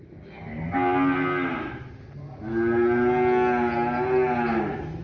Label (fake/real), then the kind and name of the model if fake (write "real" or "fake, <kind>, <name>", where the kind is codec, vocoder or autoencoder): real